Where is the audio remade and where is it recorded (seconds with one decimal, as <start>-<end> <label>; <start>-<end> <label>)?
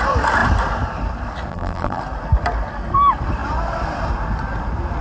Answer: 0.0-1.5 recorded; 1.5-2.0 remade; 2.0-5.0 recorded